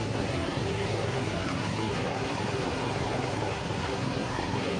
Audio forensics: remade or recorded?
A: remade